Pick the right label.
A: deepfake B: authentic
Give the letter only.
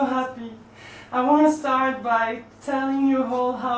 B